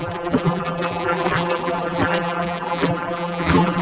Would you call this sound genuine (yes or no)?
no